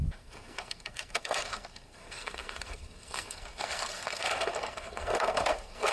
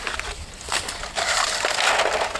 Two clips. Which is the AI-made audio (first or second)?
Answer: first